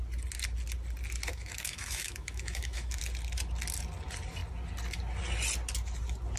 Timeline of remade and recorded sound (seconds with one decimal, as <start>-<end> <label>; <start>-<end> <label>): 0.0-1.3 recorded; 1.3-3.0 remade; 3.0-6.4 recorded